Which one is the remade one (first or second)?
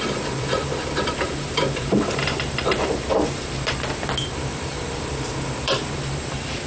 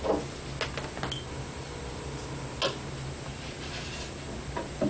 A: first